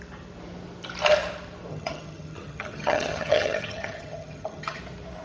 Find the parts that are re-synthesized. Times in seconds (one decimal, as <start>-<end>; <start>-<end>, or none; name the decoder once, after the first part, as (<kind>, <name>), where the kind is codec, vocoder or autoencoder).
1.7-4.8 (vocoder, HiFi-GAN)